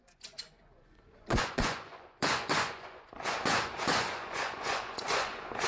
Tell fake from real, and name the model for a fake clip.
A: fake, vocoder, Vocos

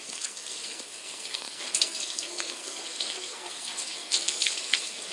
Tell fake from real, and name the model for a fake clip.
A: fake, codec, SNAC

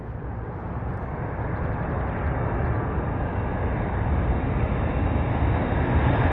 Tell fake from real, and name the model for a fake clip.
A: real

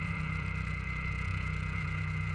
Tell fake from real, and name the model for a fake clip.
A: fake, vocoder, Vocos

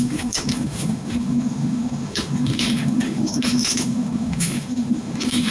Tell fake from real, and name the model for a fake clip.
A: fake, autoencoder, DAC-VAE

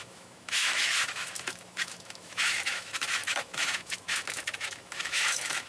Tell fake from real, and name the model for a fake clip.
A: fake, autoencoder, DAC-VAE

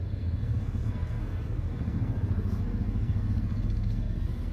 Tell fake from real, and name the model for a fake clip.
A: fake, codec, SNAC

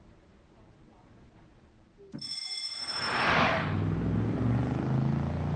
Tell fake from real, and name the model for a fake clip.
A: real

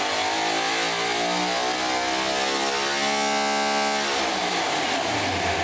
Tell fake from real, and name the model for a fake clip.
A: real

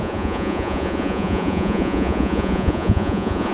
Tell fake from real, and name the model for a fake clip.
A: fake, vocoder, Vocos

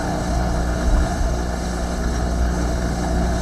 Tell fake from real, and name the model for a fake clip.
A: fake, codec, HILCodec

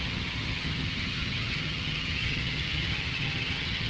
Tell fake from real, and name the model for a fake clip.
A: fake, vocoder, HiFi-GAN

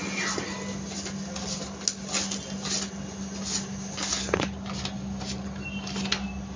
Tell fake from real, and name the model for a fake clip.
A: real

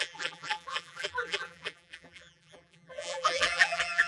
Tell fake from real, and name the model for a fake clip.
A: fake, vocoder, BigVGAN v2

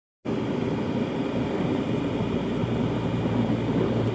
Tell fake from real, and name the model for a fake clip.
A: real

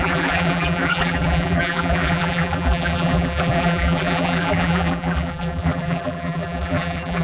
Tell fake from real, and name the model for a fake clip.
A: fake, vocoder, BigVGAN v2